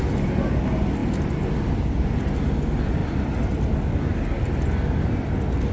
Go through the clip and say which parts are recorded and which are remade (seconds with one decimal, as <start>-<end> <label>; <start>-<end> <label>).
0.0-5.7 recorded